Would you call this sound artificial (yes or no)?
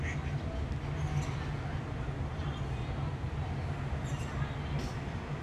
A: no